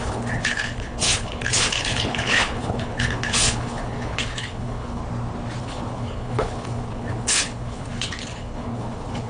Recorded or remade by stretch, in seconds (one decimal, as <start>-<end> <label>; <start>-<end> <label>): 0.0-5.0 remade; 5.0-5.6 recorded; 5.6-9.3 remade

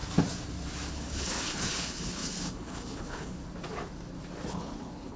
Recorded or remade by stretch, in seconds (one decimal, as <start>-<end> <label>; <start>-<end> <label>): 0.0-0.9 recorded; 0.9-3.4 remade; 3.4-4.5 recorded; 4.5-5.2 remade

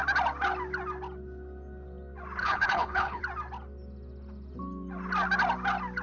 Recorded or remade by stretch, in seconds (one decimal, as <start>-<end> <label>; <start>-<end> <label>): 0.0-2.4 recorded; 2.4-3.2 remade; 3.2-6.0 recorded

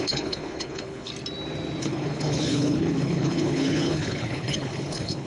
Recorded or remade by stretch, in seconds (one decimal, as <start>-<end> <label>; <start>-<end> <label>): 0.0-1.1 remade; 1.1-1.8 recorded; 1.8-5.3 remade

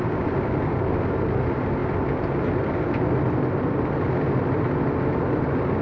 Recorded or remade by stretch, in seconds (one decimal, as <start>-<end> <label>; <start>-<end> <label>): 0.0-5.8 recorded

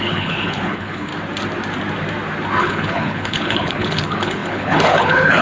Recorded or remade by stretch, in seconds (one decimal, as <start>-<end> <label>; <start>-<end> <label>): 0.0-1.1 remade; 1.1-2.6 recorded; 2.6-5.4 remade

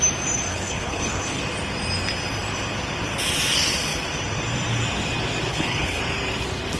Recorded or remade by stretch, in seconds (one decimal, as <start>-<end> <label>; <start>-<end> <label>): 0.0-0.5 recorded; 0.5-1.4 remade; 1.4-5.5 recorded; 5.5-6.0 remade; 6.0-6.8 recorded